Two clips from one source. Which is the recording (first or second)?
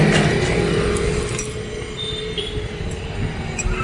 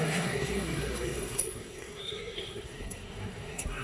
first